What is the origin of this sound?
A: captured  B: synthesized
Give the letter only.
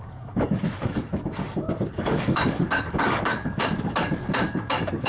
B